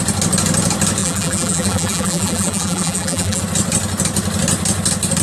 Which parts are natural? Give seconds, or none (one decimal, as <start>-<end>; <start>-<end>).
0.0-1.0; 3.4-5.2